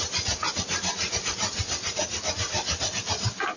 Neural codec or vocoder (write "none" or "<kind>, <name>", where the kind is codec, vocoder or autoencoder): none